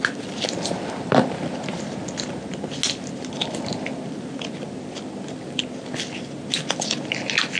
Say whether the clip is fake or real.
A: real